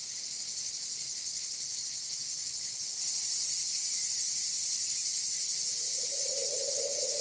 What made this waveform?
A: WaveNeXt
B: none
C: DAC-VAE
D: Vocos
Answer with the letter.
B